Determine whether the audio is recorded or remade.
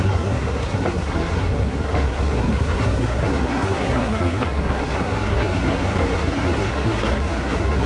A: remade